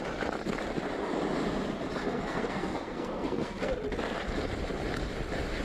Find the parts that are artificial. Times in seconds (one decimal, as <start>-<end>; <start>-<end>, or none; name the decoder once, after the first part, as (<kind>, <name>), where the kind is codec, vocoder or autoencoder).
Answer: 2.0-3.7 (codec, SNAC)